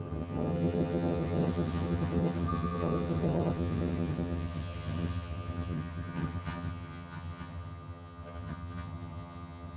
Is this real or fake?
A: fake